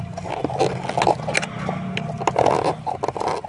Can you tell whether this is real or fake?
real